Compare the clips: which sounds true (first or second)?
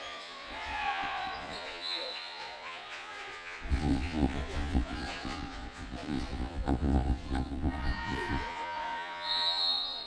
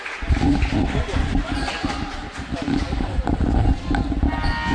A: second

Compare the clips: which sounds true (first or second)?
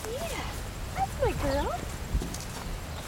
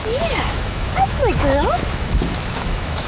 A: first